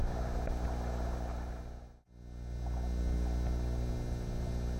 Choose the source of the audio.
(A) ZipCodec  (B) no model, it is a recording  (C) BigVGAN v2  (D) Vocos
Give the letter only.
B